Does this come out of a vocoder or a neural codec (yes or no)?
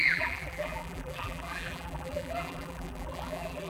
yes